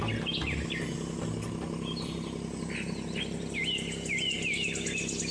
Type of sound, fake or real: real